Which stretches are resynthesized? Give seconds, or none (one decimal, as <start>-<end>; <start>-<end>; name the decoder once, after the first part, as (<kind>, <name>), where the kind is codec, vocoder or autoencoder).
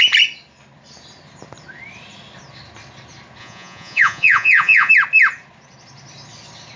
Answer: 3.4-4.9 (vocoder, Vocos)